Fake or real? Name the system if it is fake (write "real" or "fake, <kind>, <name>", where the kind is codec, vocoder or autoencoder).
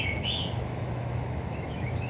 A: fake, autoencoder, DAC-VAE